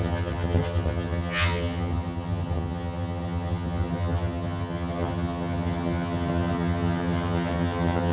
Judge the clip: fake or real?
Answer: fake